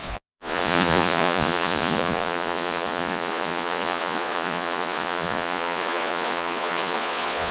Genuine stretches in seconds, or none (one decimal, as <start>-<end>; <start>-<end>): none